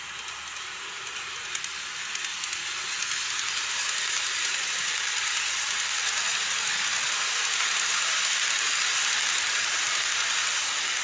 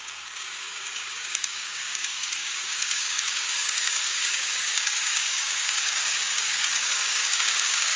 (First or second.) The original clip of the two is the first